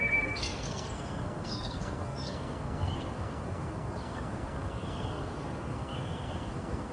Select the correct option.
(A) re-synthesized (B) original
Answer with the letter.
A